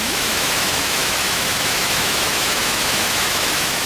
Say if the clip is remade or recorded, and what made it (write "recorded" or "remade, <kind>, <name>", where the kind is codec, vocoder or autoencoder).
remade, autoencoder, DAC-VAE